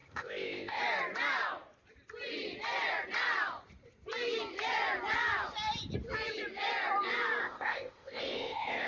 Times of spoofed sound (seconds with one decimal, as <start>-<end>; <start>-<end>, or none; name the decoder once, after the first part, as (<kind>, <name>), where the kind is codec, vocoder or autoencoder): 0.0-0.8 (codec, ZipCodec); 7.4-8.9